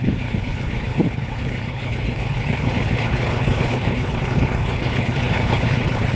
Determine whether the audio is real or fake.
fake